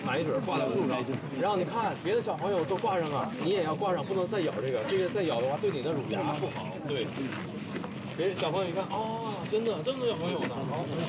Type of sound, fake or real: real